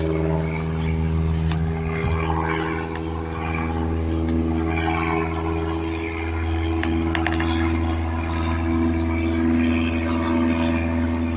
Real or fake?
real